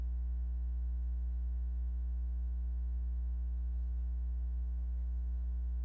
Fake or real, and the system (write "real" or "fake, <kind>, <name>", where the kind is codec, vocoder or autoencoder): real